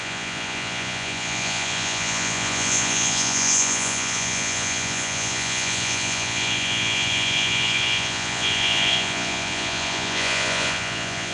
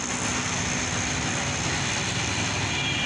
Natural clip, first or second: second